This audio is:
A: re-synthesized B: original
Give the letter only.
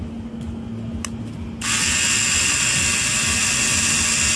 B